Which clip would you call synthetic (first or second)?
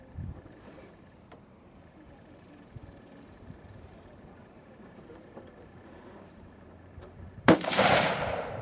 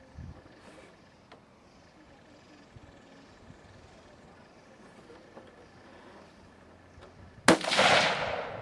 first